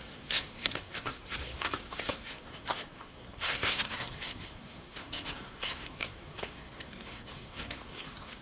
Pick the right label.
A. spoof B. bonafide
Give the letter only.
A